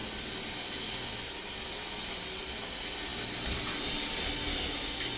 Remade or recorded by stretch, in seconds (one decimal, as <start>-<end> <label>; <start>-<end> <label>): 0.0-5.2 recorded